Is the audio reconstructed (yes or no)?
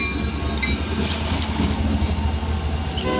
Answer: no